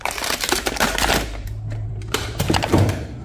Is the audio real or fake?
fake